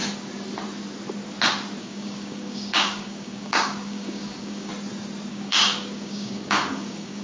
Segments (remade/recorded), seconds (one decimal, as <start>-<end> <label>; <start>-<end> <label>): 0.0-1.8 recorded; 1.8-4.7 remade; 4.7-5.3 recorded; 5.3-7.2 remade